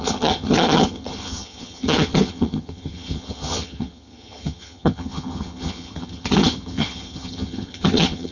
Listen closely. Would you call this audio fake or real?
fake